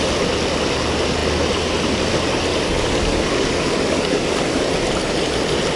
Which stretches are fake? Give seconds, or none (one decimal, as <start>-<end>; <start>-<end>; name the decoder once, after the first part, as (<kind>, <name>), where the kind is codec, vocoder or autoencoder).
2.5-4.6 (codec, DAC)